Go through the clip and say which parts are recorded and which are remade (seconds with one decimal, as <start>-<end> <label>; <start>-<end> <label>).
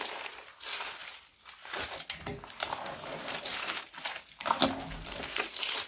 0.0-5.9 recorded